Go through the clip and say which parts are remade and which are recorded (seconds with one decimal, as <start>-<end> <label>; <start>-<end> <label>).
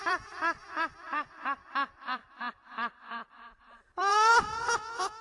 0.0-2.2 remade; 2.2-3.6 recorded; 3.6-5.2 remade